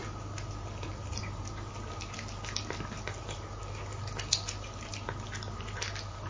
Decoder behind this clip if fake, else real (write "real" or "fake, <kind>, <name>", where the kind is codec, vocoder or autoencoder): real